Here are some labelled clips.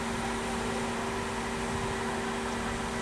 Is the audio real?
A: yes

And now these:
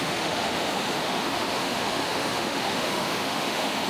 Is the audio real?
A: no